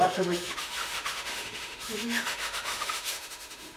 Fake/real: fake